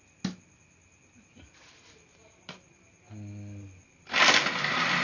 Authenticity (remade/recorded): recorded